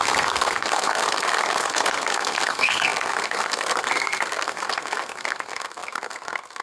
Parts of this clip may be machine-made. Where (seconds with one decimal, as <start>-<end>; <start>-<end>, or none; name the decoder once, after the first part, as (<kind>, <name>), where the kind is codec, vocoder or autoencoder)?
0.0-6.6 (codec, SNAC)